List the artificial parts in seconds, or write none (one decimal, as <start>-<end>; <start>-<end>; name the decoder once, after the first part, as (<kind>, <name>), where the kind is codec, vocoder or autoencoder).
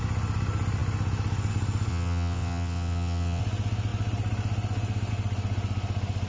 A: 1.9-3.4 (vocoder, WaveNeXt)